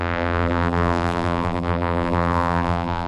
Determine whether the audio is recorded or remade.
remade